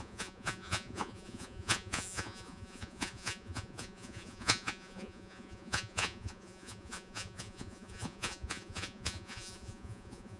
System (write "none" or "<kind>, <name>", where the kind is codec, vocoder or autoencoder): vocoder, Vocos